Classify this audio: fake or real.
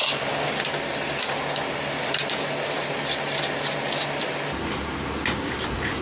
real